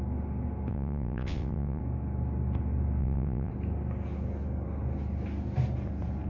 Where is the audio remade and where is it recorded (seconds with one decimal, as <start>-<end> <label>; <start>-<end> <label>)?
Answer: 0.0-0.7 recorded; 0.7-1.8 remade; 1.8-3.0 recorded; 3.0-3.5 remade; 3.5-6.3 recorded